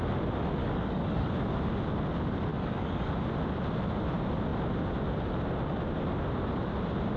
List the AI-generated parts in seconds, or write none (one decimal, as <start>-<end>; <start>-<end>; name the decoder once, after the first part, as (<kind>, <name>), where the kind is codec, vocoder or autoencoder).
0.6-1.3 (codec, DAC); 2.5-3.1